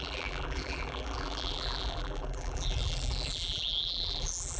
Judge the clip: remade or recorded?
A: remade